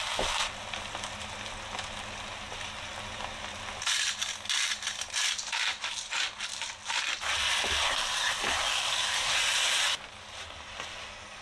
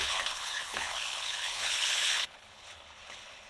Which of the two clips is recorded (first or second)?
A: first